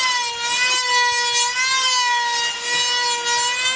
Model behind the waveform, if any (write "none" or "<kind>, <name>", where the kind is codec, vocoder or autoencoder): none